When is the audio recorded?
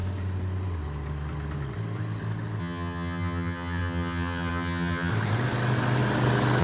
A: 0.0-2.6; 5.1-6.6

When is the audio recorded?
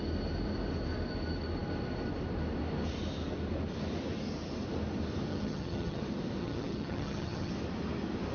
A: 0.0-5.3; 6.0-6.4; 7.5-8.3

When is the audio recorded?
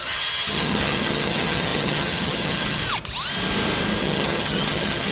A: 2.8-4.0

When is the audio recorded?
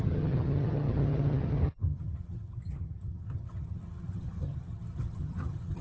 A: none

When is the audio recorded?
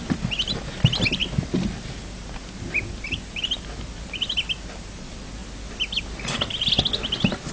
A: 0.0-7.5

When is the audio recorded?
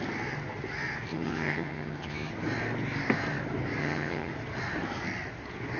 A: 0.0-1.1; 2.3-3.8; 4.3-5.8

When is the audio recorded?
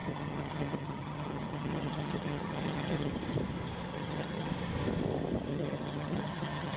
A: 3.1-3.9; 4.5-5.5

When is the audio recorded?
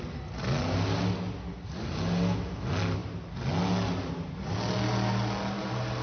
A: 0.0-6.0